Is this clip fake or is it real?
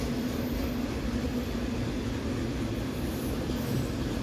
real